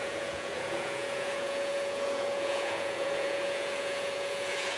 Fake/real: fake